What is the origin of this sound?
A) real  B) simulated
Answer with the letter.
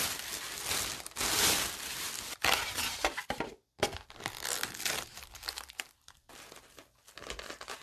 A